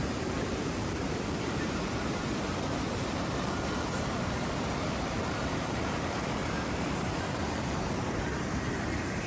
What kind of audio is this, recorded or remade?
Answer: remade